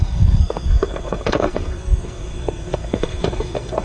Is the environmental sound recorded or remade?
remade